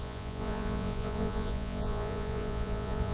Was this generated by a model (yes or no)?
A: yes